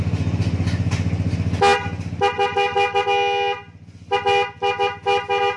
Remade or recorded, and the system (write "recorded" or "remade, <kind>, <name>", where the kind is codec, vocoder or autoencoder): recorded